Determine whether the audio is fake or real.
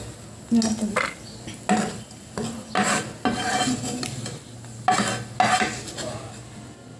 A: real